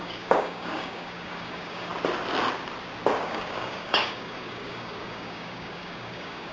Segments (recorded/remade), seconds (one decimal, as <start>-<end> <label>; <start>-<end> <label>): 0.0-1.9 remade; 1.9-3.2 recorded; 3.2-6.5 remade